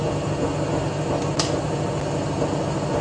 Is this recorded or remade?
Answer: recorded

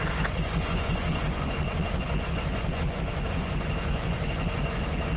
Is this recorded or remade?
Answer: remade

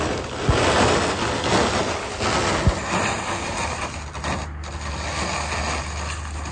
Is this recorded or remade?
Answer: recorded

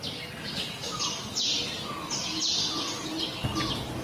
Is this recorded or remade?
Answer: recorded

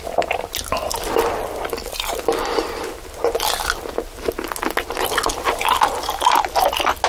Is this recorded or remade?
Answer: recorded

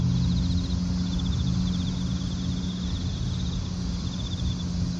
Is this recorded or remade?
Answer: recorded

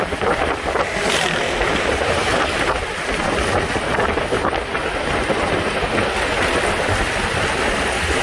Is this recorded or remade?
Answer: recorded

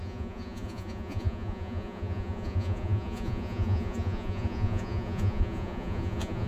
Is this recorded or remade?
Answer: remade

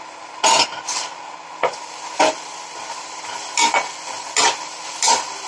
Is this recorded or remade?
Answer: recorded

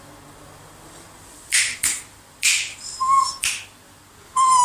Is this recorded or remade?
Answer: recorded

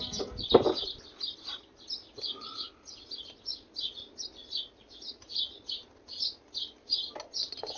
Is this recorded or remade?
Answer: recorded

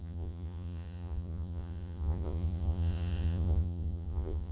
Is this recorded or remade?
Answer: remade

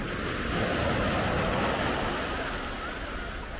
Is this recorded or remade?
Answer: recorded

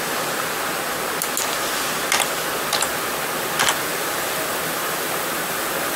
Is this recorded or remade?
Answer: recorded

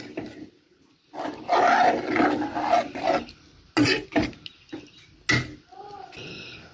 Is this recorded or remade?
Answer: recorded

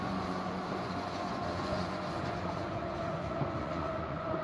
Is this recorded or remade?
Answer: remade